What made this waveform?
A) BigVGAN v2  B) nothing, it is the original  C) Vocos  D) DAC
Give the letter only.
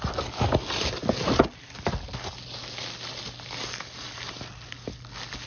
B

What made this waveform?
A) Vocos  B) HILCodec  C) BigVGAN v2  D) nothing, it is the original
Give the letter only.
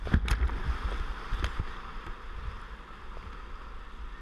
D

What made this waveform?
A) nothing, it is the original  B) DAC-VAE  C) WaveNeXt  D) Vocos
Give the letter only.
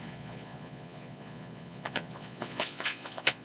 D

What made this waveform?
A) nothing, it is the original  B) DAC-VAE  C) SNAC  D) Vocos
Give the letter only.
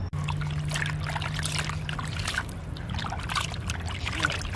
A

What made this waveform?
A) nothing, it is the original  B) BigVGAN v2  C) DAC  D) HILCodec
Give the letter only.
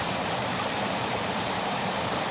B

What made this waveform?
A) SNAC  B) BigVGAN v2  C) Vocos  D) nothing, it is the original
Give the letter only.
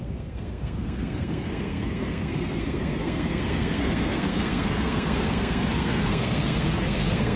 A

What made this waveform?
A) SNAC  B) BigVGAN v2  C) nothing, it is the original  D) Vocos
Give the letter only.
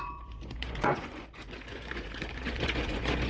D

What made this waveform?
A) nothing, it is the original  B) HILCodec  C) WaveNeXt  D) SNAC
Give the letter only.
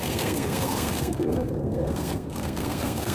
D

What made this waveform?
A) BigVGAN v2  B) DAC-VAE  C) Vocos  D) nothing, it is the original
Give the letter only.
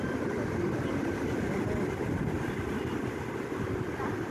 D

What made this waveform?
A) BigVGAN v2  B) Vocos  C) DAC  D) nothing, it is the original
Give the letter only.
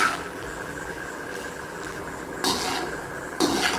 A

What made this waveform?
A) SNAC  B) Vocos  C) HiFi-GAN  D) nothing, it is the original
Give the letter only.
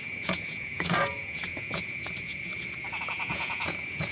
B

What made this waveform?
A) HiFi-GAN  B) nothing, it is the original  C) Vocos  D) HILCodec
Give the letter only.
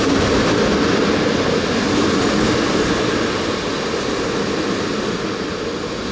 B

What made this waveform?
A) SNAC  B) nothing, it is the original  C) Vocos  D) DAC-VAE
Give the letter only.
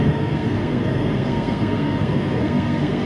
A